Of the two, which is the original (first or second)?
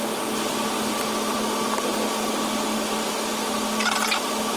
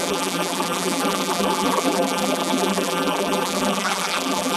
first